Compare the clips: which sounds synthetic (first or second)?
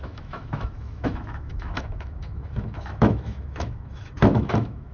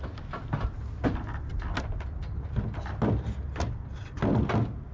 first